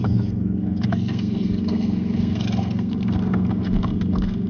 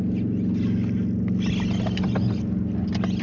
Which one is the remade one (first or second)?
first